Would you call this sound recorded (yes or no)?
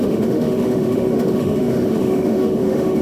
no